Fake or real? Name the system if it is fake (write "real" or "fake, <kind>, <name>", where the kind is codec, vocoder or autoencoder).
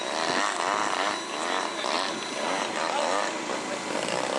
real